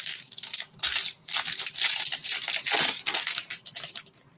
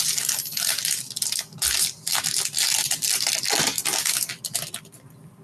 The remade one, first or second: first